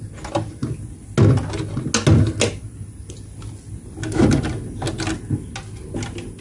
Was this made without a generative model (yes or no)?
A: yes